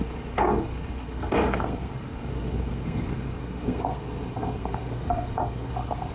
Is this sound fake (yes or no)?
yes